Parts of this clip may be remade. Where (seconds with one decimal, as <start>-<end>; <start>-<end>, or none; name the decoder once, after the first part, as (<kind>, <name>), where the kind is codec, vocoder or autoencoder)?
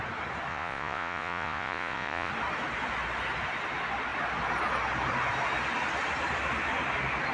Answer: 0.5-2.3 (vocoder, Vocos)